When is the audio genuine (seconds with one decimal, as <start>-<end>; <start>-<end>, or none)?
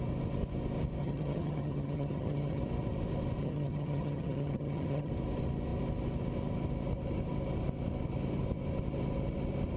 0.0-1.0; 2.6-3.4; 5.1-9.8